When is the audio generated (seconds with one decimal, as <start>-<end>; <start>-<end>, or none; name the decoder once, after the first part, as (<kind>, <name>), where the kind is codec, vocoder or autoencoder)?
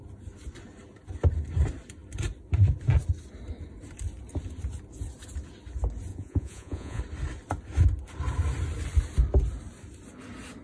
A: 6.1-7.0 (vocoder, Vocos)